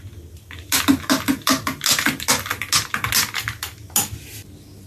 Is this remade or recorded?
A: recorded